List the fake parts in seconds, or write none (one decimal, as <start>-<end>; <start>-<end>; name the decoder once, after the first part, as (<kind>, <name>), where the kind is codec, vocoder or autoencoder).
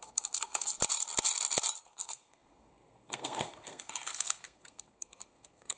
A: 0.0-0.7 (codec, SNAC); 1.8-5.8